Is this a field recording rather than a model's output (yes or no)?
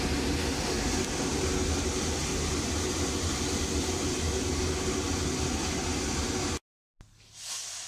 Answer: yes